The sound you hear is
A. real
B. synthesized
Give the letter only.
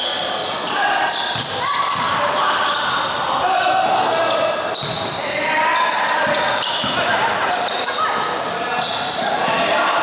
A